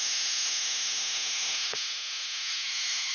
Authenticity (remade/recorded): remade